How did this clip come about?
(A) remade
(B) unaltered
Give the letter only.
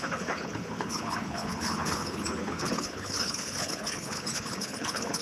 A